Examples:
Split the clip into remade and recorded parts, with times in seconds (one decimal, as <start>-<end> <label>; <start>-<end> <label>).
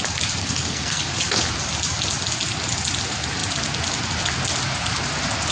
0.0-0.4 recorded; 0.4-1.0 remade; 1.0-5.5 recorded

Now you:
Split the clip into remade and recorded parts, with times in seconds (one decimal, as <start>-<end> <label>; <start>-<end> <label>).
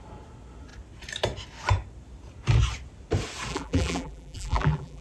0.0-3.5 recorded; 3.5-5.0 remade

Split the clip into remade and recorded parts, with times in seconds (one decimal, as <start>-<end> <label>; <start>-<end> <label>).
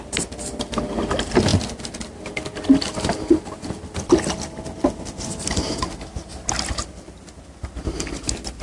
0.0-8.6 recorded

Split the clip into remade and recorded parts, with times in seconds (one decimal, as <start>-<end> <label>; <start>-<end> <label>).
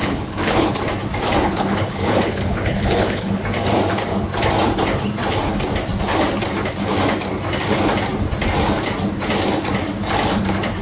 0.0-0.7 remade; 0.7-1.5 recorded; 1.5-3.4 remade; 3.4-10.8 recorded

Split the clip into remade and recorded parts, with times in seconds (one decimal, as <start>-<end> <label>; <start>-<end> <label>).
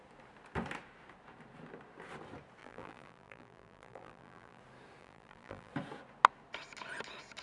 0.0-2.6 recorded; 2.6-4.6 remade; 4.6-5.0 recorded; 5.0-5.7 remade; 5.7-7.4 recorded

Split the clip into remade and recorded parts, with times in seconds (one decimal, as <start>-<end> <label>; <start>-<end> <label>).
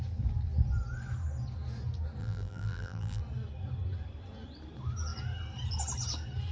0.0-2.2 recorded; 2.2-3.2 remade; 3.2-6.5 recorded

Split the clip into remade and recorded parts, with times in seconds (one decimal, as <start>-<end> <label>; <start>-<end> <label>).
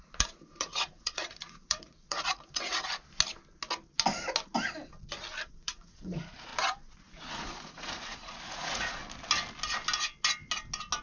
0.0-2.9 remade; 2.9-5.5 recorded; 5.5-6.5 remade; 6.5-7.0 recorded; 7.0-9.0 remade; 9.0-11.0 recorded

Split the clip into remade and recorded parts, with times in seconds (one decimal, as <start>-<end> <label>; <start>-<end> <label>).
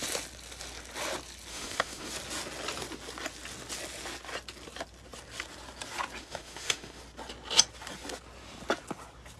0.0-1.5 recorded; 1.5-2.1 remade; 2.1-6.2 recorded; 6.2-7.0 remade; 7.0-9.4 recorded